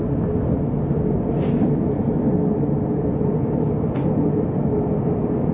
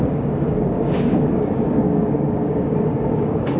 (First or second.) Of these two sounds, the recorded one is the first